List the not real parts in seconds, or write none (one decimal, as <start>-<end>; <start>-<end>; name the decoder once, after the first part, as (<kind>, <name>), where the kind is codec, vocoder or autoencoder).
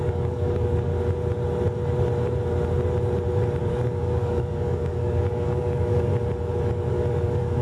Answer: 0.0-0.9 (codec, DAC); 3.6-6.1; 6.9-7.6